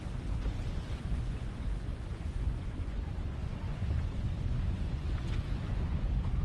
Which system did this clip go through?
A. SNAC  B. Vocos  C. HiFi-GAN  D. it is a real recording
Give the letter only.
B